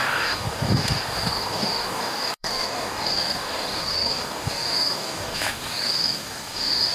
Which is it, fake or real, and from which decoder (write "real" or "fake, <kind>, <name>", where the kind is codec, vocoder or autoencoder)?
fake, codec, DAC